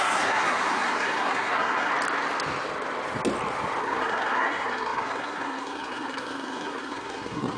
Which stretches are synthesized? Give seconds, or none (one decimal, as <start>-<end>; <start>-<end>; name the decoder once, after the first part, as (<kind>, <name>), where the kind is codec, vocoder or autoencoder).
0.0-1.9 (codec, SNAC); 3.8-7.6